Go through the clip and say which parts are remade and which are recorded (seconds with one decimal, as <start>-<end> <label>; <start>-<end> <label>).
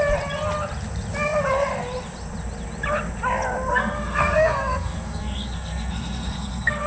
0.0-3.7 recorded; 3.7-6.9 remade